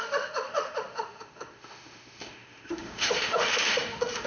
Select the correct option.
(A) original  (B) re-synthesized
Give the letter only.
B